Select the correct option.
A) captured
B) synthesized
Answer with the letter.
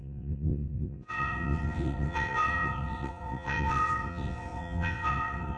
B